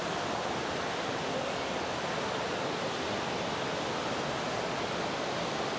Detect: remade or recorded recorded